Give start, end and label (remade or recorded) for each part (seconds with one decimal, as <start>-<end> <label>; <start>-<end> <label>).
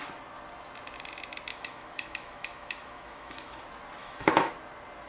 0.0-1.5 recorded; 1.5-3.6 remade; 3.6-4.0 recorded; 4.0-4.5 remade; 4.5-5.1 recorded